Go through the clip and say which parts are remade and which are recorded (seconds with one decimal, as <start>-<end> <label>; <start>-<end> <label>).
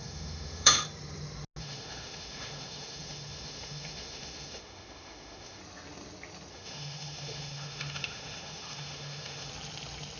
0.0-0.8 remade; 0.8-1.6 recorded; 1.6-5.6 remade; 5.6-6.5 recorded; 6.5-9.5 remade; 9.5-10.2 recorded